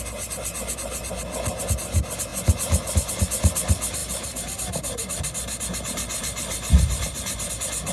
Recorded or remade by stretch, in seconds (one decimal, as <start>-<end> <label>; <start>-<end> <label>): 0.0-4.0 recorded; 4.0-7.5 remade; 7.5-7.9 recorded